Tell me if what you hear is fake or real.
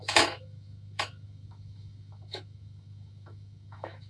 fake